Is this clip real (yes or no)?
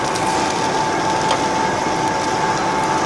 yes